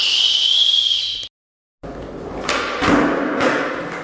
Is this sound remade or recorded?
recorded